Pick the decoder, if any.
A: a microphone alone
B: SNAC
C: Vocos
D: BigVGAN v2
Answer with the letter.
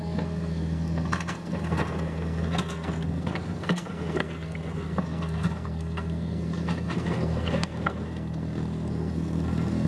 B